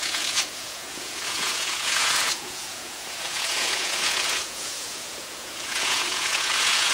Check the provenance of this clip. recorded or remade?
remade